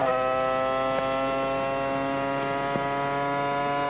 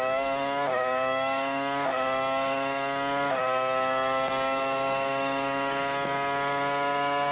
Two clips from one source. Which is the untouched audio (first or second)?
first